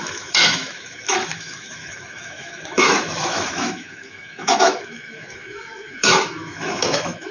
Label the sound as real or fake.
fake